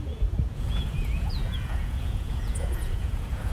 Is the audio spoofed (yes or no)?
yes